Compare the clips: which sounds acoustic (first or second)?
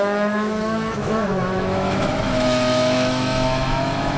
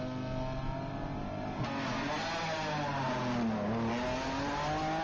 second